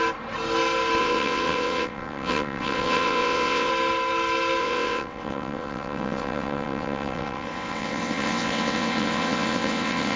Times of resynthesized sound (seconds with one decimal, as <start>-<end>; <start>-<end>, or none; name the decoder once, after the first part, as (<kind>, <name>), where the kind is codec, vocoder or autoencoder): 1.0-3.7 (vocoder, WaveNeXt); 4.6-10.2